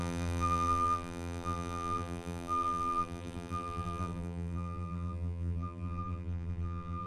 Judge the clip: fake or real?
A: fake